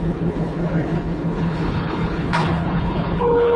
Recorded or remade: remade